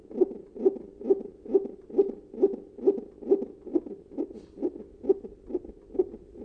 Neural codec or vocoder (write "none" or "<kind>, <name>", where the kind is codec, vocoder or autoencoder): none